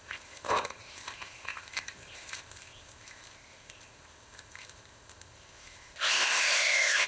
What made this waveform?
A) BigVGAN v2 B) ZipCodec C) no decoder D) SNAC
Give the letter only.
B